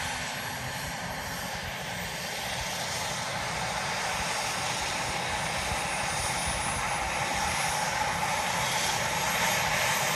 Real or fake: real